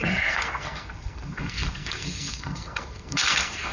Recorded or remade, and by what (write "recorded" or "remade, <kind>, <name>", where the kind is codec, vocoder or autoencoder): remade, codec, SNAC